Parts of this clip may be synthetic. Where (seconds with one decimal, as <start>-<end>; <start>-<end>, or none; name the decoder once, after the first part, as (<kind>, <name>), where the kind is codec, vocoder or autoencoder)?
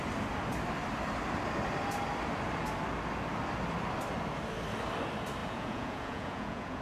5.4-6.8 (vocoder, Vocos)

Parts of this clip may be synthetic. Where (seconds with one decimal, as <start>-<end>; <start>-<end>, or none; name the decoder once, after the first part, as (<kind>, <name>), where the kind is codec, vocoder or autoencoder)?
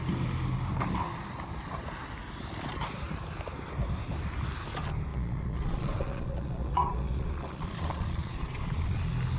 5.1-9.0 (vocoder, Vocos)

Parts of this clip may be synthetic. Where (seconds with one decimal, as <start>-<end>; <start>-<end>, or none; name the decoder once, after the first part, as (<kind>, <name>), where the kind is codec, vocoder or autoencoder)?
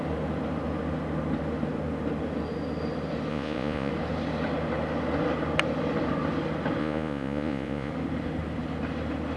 3.3-3.9 (vocoder, Vocos); 6.8-7.9